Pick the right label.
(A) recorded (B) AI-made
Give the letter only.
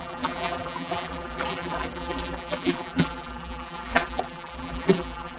B